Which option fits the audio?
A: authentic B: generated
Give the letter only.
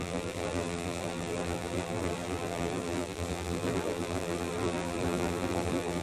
B